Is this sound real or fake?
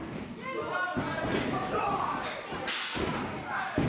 real